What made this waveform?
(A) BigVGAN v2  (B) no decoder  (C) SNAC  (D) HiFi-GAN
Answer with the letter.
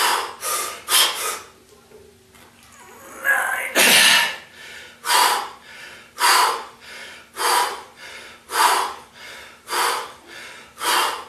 B